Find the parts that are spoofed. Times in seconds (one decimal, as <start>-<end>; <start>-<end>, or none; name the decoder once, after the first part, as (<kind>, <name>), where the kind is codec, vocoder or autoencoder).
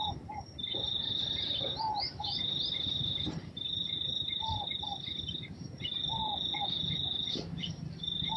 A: 0.0-6.2 (vocoder, BigVGAN v2); 7.3-8.4